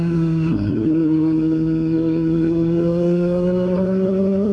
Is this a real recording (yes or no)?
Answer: no